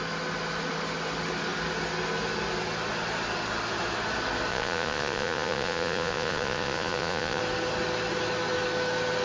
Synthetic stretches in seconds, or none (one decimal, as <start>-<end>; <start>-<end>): 4.5-7.4